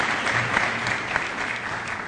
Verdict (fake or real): real